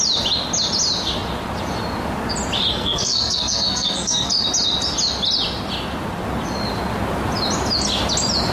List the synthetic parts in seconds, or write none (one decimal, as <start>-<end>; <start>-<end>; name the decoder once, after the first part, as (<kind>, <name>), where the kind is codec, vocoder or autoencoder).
2.7-4.3 (codec, SNAC)